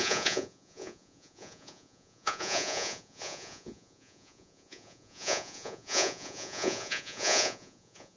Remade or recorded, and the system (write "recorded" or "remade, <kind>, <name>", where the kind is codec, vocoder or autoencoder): remade, vocoder, Vocos